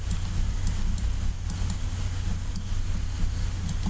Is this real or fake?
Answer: real